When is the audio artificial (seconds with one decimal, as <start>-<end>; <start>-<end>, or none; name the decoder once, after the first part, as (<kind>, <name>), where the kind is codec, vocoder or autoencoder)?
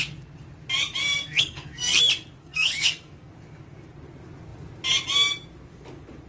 1.0-2.0 (codec, SNAC); 2.4-3.3